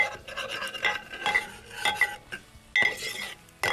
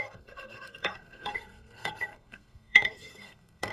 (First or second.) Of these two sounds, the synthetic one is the second